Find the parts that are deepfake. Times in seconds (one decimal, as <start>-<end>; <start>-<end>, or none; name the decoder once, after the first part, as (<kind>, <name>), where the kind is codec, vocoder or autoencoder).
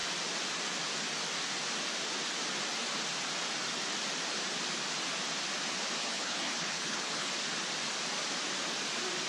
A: 6.0-7.3 (codec, HILCodec)